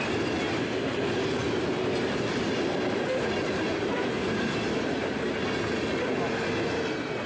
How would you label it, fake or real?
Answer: real